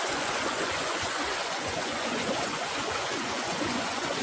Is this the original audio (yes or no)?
no